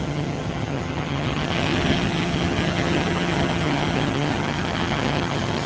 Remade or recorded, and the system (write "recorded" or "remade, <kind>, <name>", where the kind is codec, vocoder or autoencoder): remade, vocoder, HiFi-GAN